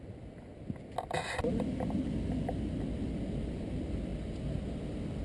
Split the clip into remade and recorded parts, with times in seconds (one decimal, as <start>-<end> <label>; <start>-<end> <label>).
0.0-5.2 recorded